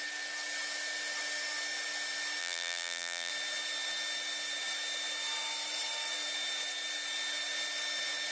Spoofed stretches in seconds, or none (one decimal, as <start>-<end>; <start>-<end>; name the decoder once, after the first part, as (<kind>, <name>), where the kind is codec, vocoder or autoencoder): 2.4-3.3 (vocoder, BigVGAN v2)